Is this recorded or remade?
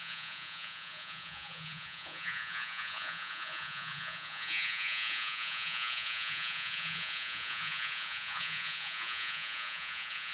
remade